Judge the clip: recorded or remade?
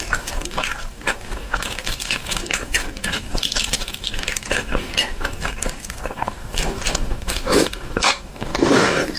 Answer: remade